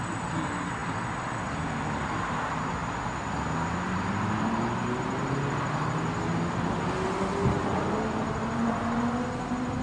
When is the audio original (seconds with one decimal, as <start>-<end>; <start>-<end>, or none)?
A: 0.0-9.8